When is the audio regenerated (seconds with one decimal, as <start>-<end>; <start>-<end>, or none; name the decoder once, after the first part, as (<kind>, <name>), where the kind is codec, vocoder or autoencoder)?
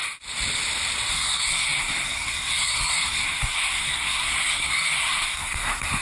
1.1-6.0 (codec, SNAC)